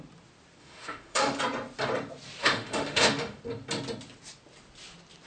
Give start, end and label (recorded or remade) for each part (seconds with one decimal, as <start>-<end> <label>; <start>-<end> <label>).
0.0-0.6 recorded; 0.6-1.4 remade; 1.4-2.4 recorded; 2.4-3.4 remade; 3.4-5.3 recorded